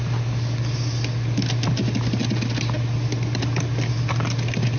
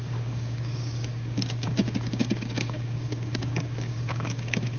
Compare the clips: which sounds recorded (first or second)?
first